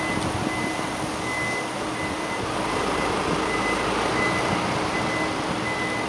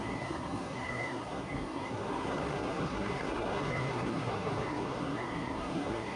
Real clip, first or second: first